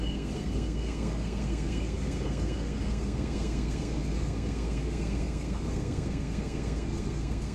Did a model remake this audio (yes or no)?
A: yes